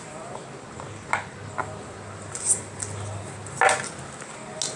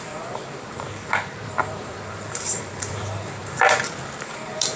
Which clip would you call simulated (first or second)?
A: second